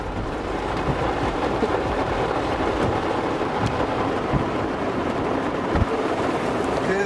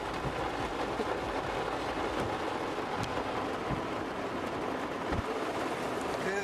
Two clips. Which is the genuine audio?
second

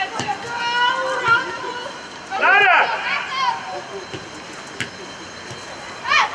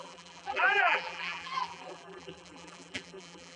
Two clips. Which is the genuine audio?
first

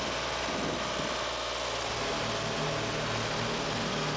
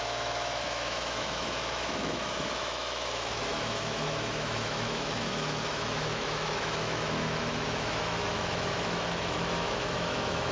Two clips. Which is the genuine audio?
first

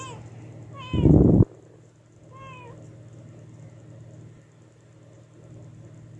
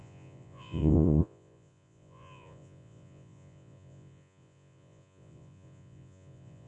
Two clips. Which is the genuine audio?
first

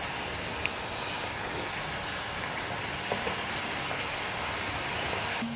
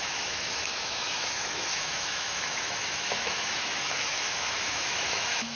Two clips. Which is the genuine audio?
first